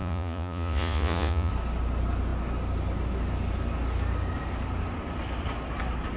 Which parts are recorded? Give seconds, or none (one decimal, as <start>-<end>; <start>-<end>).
1.5-6.2